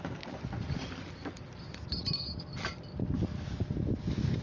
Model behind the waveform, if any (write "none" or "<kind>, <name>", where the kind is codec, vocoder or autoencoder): none